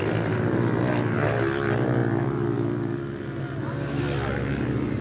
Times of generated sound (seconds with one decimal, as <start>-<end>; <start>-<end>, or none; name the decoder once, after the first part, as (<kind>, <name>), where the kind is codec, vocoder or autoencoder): none